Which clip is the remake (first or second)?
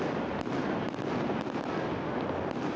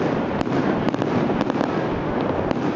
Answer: second